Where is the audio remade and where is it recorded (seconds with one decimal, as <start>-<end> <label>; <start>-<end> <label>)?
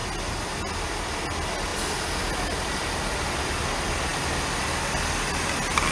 0.0-5.9 recorded